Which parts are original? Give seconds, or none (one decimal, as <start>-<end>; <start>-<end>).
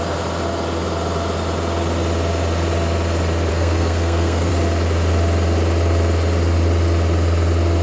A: 0.0-3.5; 4.5-7.8